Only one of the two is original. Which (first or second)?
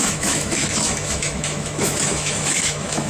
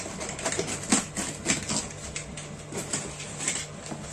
second